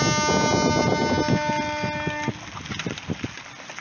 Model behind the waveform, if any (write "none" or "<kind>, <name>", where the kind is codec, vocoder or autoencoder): none